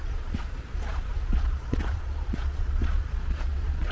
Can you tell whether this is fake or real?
fake